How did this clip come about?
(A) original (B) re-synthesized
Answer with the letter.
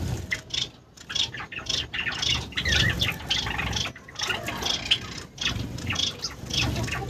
A